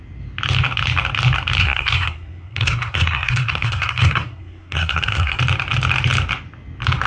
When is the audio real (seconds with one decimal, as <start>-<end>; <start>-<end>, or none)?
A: 0.0-1.6; 5.4-7.1